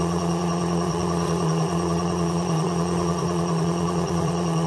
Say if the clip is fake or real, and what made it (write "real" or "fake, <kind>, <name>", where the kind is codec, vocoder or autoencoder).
fake, vocoder, Vocos